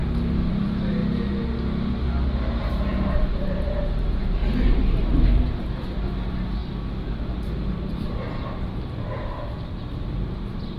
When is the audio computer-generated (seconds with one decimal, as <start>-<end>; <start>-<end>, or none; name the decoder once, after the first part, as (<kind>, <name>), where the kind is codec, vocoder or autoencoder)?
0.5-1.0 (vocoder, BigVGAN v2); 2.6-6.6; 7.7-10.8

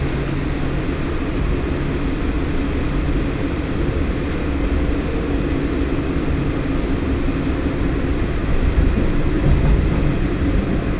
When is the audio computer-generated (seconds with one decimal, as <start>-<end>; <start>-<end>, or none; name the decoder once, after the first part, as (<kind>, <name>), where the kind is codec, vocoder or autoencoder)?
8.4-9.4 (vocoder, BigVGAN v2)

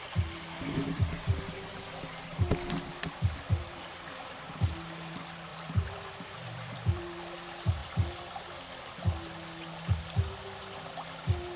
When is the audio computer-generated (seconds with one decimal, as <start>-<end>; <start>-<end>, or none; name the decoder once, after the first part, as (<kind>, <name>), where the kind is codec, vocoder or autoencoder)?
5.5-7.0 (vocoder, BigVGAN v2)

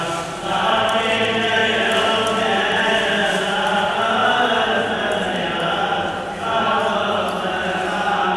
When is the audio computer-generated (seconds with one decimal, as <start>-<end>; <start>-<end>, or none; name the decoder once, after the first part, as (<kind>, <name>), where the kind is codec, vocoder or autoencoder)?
3.2-3.8 (vocoder, BigVGAN v2)

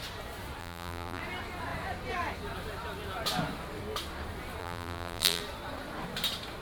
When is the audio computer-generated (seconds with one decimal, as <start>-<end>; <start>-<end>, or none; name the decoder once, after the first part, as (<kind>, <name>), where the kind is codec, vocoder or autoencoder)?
0.6-1.2 (vocoder, BigVGAN v2); 4.6-5.4